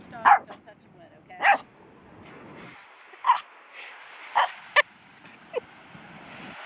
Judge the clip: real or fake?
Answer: real